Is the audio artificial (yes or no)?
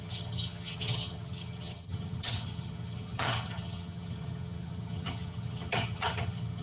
yes